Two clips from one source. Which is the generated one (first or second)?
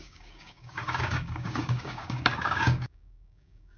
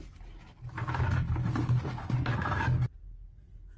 first